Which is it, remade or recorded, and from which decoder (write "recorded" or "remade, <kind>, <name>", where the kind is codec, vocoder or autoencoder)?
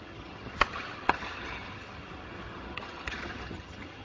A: remade, vocoder, HiFi-GAN